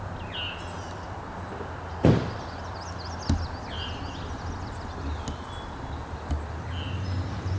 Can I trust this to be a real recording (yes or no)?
yes